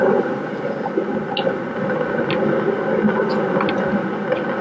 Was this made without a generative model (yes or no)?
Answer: yes